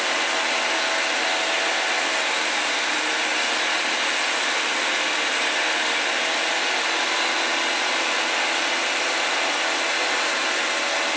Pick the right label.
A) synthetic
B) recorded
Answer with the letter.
B